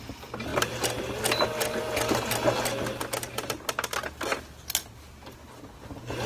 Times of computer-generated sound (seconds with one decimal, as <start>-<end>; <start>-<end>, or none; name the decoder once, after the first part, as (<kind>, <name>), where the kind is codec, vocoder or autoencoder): none